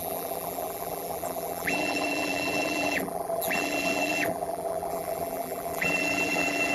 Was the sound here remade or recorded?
remade